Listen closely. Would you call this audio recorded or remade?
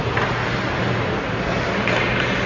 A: recorded